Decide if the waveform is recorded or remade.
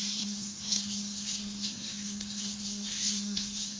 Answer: remade